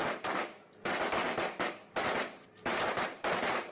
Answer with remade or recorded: remade